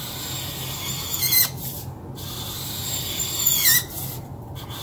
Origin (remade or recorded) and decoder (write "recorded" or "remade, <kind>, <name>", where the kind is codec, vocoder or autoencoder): recorded